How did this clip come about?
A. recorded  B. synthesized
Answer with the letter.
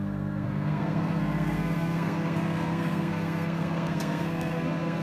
B